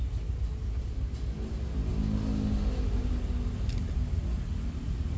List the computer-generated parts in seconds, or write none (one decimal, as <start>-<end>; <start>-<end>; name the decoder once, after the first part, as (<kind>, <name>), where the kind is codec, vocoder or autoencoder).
none